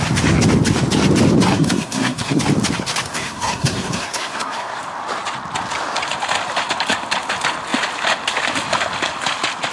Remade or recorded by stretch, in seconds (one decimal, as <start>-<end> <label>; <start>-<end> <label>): 0.0-1.5 recorded; 1.5-2.4 remade; 2.4-3.1 recorded; 3.1-4.8 remade; 4.8-9.7 recorded